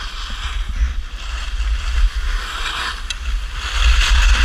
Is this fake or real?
real